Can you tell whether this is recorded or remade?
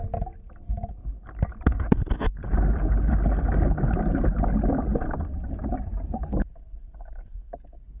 recorded